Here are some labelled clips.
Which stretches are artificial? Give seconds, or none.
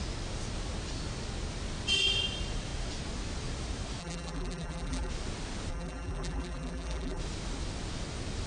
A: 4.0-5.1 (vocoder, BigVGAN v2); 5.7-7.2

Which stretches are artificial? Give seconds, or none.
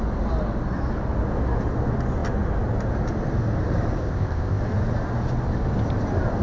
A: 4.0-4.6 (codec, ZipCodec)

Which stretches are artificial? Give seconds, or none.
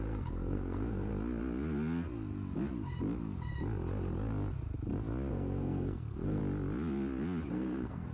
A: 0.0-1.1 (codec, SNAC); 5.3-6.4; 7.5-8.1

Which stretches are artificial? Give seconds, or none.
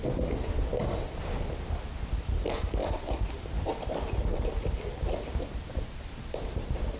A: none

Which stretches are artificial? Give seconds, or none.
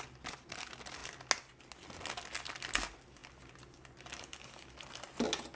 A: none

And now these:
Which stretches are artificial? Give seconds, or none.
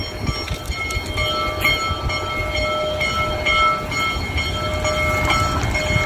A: none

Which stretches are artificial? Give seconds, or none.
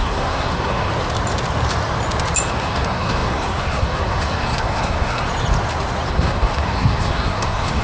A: 0.0-0.9 (codec, SNAC); 2.5-5.3; 6.1-7.8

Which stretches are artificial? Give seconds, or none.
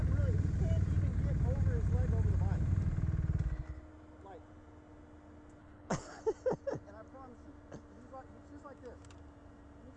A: 5.6-6.2 (codec, HILCodec)